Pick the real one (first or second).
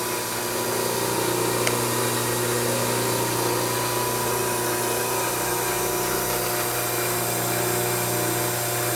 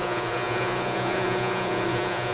first